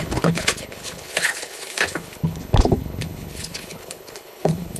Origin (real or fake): fake